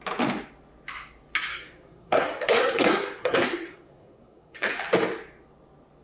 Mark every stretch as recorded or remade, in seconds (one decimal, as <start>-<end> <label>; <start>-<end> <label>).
0.0-1.5 recorded; 1.5-4.7 remade; 4.7-6.0 recorded